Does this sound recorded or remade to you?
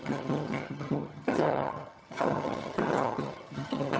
remade